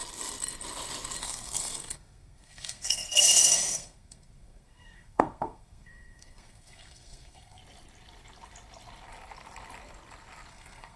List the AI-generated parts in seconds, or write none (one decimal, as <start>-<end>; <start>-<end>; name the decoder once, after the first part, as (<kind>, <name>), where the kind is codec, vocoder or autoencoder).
1.2-7.6 (codec, SNAC); 10.5-11.0